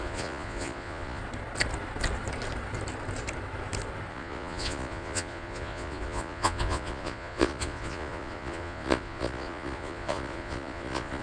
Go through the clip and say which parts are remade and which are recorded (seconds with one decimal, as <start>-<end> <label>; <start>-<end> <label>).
0.0-1.2 remade; 1.2-4.1 recorded; 4.1-11.2 remade